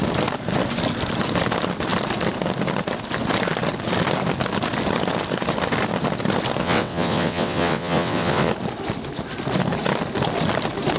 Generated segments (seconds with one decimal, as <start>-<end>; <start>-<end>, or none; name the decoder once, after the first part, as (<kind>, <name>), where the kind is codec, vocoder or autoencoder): 6.6-8.5 (vocoder, WaveNeXt)